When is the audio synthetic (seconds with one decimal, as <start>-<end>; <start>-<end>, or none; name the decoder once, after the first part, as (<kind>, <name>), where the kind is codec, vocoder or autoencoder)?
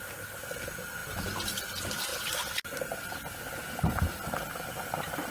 3.6-4.2 (vocoder, Vocos)